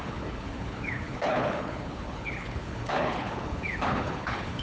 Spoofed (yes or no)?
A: yes